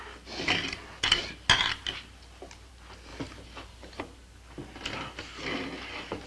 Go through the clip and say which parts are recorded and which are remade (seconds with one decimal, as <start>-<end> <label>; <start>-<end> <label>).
0.0-6.3 recorded